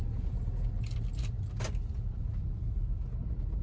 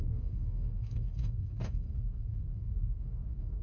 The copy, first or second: second